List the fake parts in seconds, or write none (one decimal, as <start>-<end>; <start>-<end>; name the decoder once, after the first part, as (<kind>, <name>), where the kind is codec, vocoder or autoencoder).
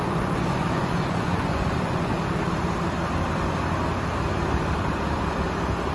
0.0-2.1 (vocoder, Vocos)